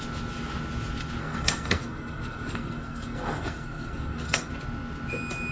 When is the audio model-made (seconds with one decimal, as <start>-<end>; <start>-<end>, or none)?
1.2-4.5